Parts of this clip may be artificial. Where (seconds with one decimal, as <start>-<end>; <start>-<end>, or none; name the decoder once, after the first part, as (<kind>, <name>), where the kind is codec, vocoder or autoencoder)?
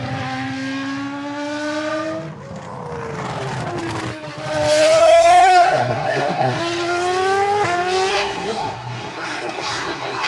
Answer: 5.0-6.6 (codec, SNAC); 8.1-10.3